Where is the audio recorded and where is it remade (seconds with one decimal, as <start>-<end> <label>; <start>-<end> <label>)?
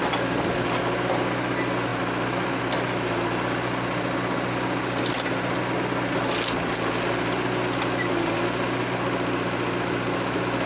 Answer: 0.0-10.7 recorded